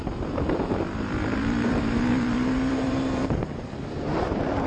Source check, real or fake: fake